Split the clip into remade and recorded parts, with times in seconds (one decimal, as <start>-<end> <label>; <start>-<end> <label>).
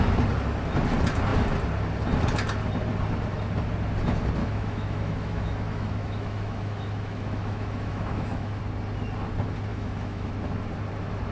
0.0-4.4 recorded; 4.4-8.6 remade; 8.6-9.7 recorded; 9.7-10.3 remade; 10.3-11.3 recorded